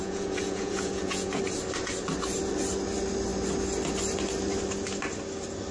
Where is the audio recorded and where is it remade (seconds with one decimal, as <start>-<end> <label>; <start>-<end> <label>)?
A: 0.0-1.4 remade; 1.4-5.7 recorded